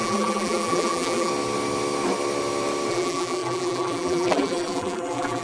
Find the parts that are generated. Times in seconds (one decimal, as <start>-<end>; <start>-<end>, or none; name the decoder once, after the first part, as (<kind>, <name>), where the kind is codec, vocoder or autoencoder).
0.0-1.3 (vocoder, BigVGAN v2); 2.9-5.4